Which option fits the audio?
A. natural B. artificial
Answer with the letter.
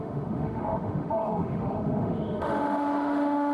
B